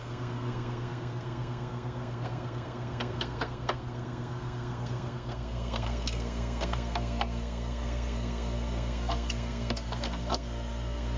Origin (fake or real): fake